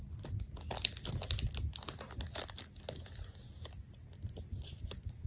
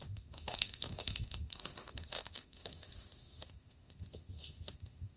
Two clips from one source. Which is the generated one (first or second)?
second